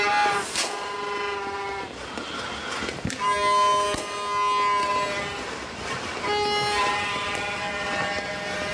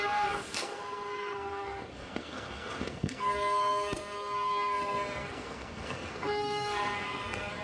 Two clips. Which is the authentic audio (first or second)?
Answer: first